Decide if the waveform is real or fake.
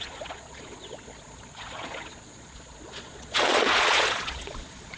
fake